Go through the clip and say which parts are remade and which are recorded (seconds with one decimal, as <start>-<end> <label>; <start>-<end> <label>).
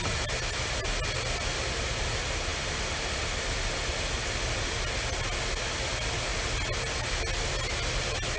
0.0-8.4 recorded